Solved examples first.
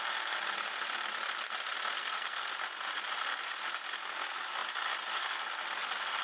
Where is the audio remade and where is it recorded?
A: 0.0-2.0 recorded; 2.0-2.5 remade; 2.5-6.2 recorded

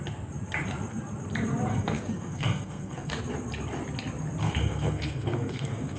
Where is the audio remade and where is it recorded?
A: 0.0-1.7 recorded; 1.7-3.1 remade; 3.1-4.4 recorded; 4.4-6.0 remade